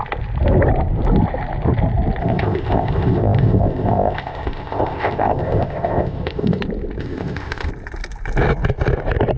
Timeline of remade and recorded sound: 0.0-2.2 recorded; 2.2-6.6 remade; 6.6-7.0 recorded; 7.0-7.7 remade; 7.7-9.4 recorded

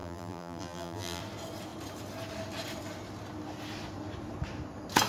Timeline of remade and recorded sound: 0.0-1.2 remade; 1.2-5.1 recorded

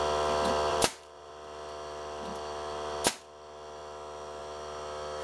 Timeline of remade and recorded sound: 0.0-0.7 recorded; 0.7-1.3 remade; 1.3-5.2 recorded

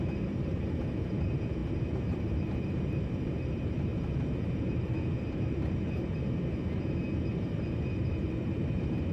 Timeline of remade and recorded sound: 0.0-9.1 remade

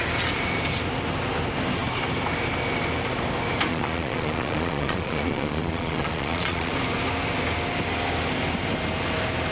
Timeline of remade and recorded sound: 0.0-3.7 recorded; 3.7-6.7 remade; 6.7-9.5 recorded